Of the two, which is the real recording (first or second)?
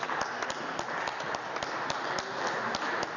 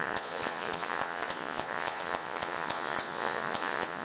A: first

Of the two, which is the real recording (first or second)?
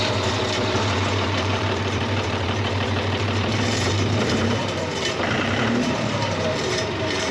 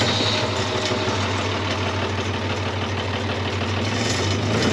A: second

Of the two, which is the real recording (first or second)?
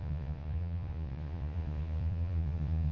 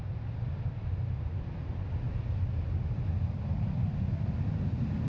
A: second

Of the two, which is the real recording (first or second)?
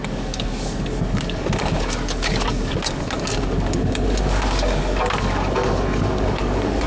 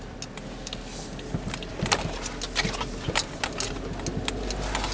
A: second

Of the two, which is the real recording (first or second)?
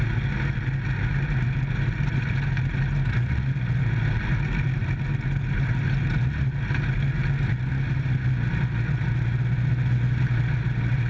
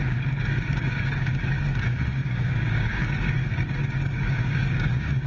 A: first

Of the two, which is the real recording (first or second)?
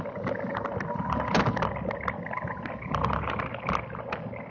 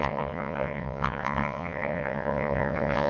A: first